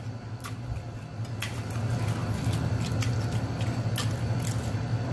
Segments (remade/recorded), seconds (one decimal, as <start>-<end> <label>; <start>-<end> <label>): 0.0-2.2 recorded; 2.2-3.6 remade; 3.6-5.1 recorded